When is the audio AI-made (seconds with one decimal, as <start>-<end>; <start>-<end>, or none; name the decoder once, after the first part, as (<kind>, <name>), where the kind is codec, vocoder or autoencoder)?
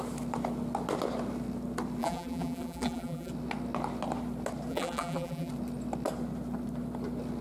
2.0-3.3 (vocoder, BigVGAN v2); 4.7-5.5